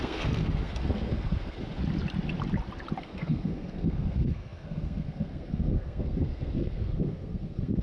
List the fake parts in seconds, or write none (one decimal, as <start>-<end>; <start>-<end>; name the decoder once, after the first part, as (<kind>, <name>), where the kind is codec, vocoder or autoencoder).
0.0-1.8 (codec, SNAC); 3.0-7.8